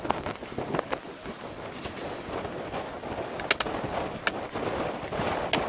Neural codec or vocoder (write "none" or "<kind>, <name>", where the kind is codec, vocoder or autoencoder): none